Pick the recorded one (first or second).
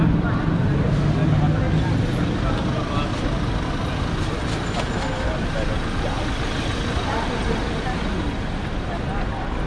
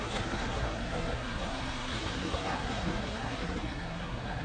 first